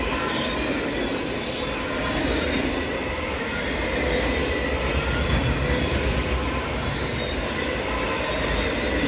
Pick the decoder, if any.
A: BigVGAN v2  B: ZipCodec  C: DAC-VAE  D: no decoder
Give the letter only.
D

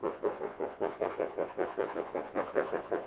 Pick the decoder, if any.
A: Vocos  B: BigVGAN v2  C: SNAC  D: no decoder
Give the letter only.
A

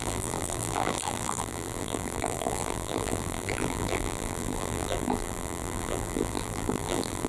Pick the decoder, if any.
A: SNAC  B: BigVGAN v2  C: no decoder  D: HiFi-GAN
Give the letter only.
B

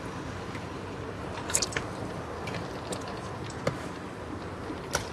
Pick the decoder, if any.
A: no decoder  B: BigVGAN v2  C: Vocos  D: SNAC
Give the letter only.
A